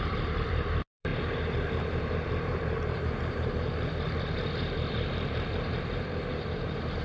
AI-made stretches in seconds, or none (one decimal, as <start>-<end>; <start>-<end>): 0.0-7.0